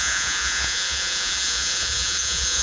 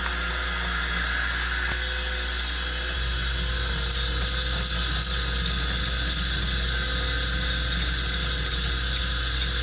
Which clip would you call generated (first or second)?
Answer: first